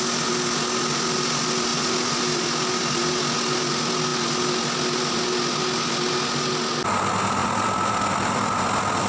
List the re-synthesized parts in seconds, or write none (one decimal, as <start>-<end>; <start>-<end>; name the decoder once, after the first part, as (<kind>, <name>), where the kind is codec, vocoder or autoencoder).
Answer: none